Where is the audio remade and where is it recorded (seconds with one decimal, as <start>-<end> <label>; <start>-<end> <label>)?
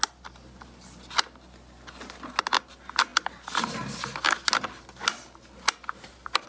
0.0-6.5 recorded